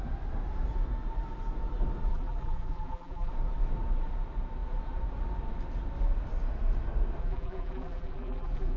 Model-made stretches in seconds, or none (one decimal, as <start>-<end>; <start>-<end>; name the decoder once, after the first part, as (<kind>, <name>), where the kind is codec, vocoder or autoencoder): 2.1-3.3 (vocoder, BigVGAN v2); 7.2-8.8